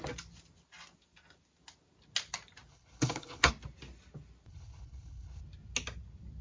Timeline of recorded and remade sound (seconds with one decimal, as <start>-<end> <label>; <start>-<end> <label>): 0.0-2.7 recorded; 2.7-3.5 remade; 3.5-4.5 recorded; 4.5-5.4 remade; 5.4-6.4 recorded